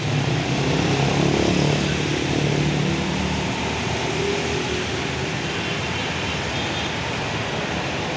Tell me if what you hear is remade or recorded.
recorded